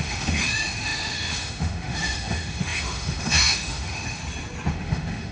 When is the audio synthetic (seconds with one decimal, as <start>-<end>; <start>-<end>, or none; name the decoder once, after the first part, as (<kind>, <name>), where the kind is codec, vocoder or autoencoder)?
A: 0.0-4.2 (autoencoder, DAC-VAE); 4.7-5.3